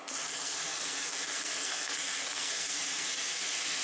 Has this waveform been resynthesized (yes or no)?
yes